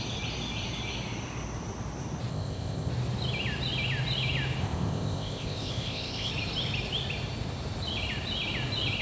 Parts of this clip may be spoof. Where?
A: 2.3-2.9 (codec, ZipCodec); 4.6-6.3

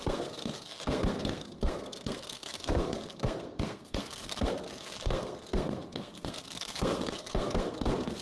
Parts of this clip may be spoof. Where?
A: 0.0-8.2 (codec, SNAC)